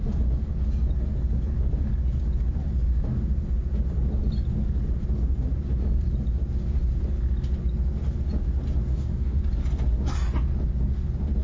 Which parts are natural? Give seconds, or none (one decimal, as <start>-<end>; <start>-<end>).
0.0-8.9; 9.4-11.4